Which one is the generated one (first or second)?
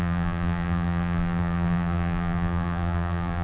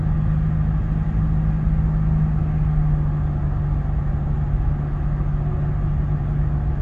first